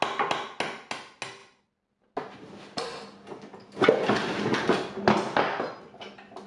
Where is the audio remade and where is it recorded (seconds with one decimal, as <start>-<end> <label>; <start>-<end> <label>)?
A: 0.0-6.5 recorded